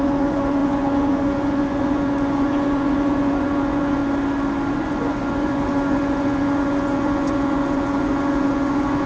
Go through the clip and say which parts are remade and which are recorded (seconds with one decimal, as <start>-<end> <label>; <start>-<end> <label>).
0.0-4.0 remade; 4.0-4.7 recorded; 4.7-9.1 remade